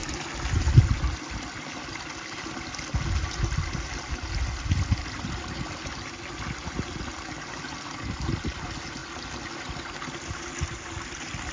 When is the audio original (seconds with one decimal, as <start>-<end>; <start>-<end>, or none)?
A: 0.0-11.5